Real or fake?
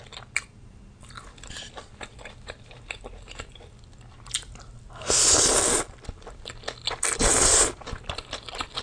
real